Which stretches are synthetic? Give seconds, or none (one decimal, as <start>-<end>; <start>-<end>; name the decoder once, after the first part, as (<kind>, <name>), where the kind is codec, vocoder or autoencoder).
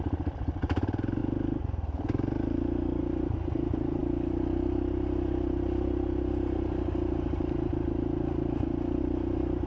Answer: 0.0-1.2 (vocoder, BigVGAN v2); 3.0-9.7